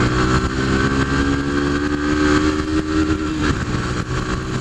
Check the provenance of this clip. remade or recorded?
recorded